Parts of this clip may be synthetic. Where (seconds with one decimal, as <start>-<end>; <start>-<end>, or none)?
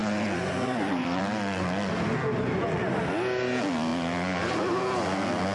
0.0-1.2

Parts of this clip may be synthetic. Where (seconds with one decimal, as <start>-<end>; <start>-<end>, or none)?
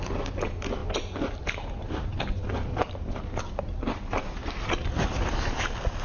none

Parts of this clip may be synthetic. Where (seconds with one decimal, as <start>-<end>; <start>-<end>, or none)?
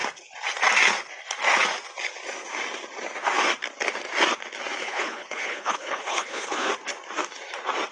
4.8-6.7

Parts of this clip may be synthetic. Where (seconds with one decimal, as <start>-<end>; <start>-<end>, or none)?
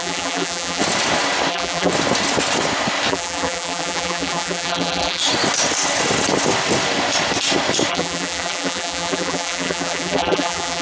0.0-0.8; 1.5-1.9; 3.1-5.2; 7.9-10.8